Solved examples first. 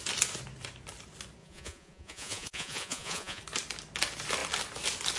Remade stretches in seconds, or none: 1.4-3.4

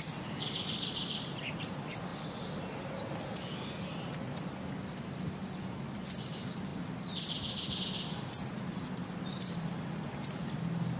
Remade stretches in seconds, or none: 0.0-2.1; 4.4-6.7; 7.8-11.0

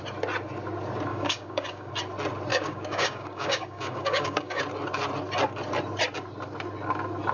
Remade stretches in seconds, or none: 1.1-1.9; 2.5-4.6

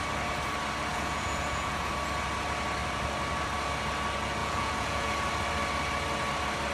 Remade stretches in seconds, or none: 0.9-1.9; 4.4-5.1

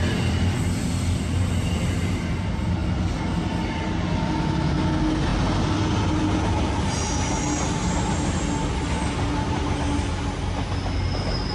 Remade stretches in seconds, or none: none